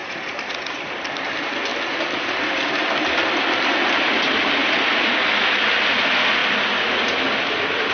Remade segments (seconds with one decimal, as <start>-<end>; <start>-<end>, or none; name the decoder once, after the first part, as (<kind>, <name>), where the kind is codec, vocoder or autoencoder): 0.0-0.9 (vocoder, Vocos)